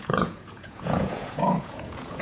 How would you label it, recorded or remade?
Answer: remade